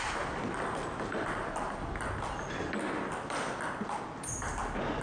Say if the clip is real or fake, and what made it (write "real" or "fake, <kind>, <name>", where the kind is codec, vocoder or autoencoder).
real